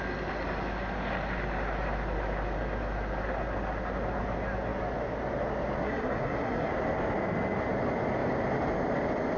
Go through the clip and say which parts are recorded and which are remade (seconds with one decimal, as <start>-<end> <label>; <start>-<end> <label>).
0.0-5.8 recorded; 5.8-6.7 remade; 6.7-9.4 recorded